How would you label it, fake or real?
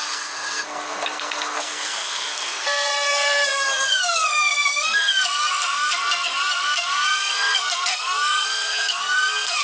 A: fake